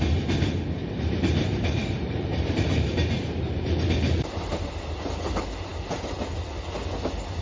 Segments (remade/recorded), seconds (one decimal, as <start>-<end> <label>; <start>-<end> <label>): 0.0-0.8 recorded; 0.8-5.0 remade; 5.0-7.4 recorded